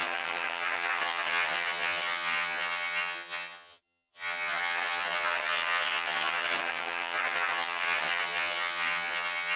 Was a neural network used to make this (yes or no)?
yes